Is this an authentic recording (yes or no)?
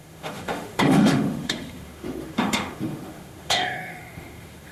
no